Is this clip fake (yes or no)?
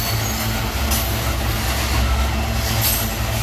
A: no